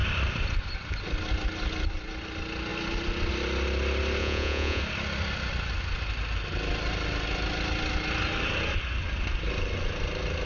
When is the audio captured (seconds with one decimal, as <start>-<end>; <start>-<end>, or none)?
0.0-4.2; 4.8-10.5